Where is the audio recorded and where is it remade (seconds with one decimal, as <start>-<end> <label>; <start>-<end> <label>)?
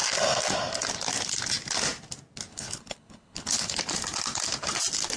0.0-2.5 recorded; 2.5-3.8 remade; 3.8-5.2 recorded